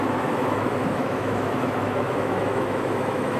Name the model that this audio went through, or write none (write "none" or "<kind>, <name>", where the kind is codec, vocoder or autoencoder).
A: autoencoder, DAC-VAE